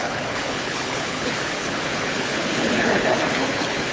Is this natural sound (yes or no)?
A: no